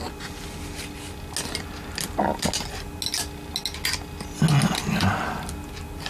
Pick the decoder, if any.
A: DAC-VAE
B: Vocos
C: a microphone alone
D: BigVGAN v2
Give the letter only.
C